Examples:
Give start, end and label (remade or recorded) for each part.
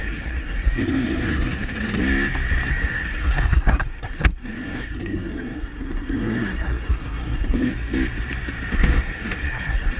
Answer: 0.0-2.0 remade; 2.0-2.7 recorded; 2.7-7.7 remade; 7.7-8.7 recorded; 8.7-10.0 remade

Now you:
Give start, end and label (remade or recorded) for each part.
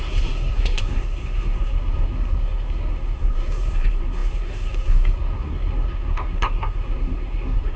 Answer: 0.0-7.8 remade